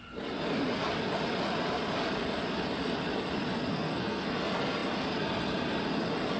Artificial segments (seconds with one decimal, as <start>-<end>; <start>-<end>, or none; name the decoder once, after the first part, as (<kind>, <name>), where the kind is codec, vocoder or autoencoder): 3.7-4.3 (codec, SNAC)